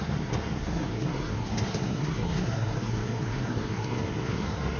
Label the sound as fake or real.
fake